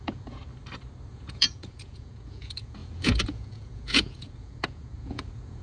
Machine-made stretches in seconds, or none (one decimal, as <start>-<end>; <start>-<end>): 0.0-0.4; 1.1-5.6